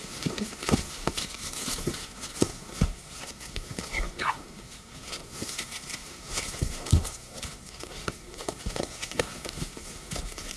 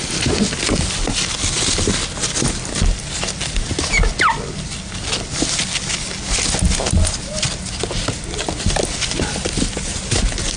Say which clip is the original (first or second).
second